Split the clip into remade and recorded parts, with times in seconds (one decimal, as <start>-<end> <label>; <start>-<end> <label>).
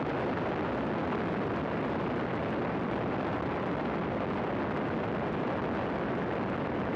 0.0-7.0 recorded